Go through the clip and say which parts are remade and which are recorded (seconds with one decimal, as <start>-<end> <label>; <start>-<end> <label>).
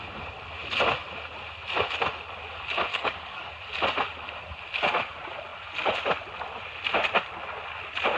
0.0-2.9 recorded; 2.9-3.5 remade; 3.5-8.2 recorded